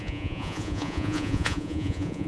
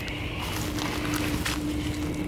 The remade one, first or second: first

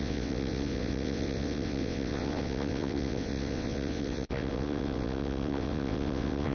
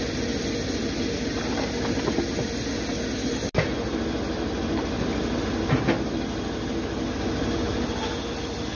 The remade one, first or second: first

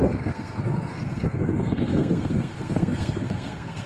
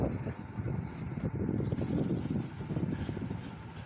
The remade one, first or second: first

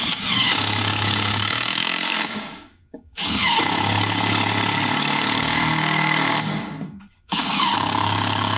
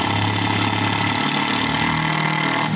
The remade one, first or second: first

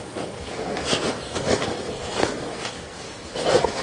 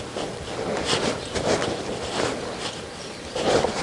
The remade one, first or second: first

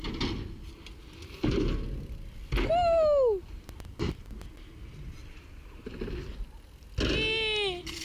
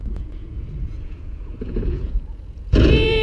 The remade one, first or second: second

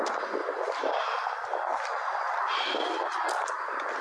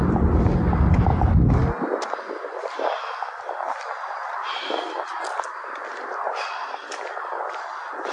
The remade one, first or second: first